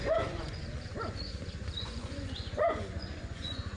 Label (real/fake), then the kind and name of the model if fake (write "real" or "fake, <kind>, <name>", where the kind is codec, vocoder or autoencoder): fake, vocoder, Vocos